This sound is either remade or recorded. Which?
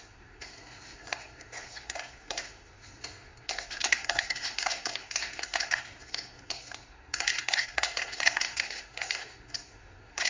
remade